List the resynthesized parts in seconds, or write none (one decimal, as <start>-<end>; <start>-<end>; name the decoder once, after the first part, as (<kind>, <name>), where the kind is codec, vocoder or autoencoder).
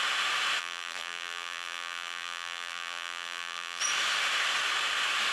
0.6-3.8 (vocoder, BigVGAN v2)